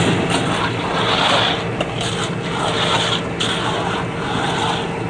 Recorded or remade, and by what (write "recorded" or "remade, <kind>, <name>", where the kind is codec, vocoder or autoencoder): recorded